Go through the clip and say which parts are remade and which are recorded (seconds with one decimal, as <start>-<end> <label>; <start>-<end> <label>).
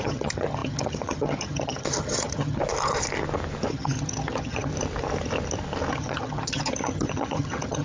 0.0-2.6 remade; 2.6-3.7 recorded; 3.7-4.7 remade; 4.7-5.9 recorded; 5.9-7.8 remade